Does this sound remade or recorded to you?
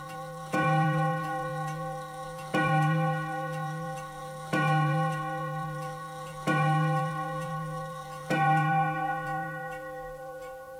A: remade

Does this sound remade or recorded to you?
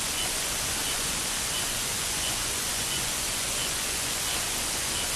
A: remade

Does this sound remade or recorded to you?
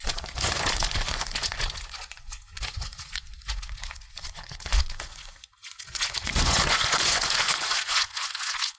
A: remade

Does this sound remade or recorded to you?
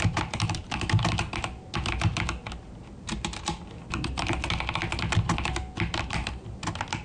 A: recorded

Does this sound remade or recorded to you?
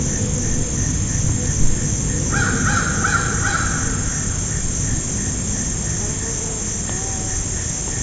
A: recorded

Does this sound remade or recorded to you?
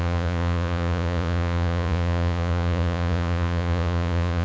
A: remade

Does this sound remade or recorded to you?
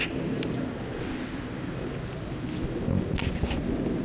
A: recorded